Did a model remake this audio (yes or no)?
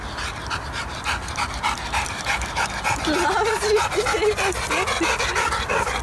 no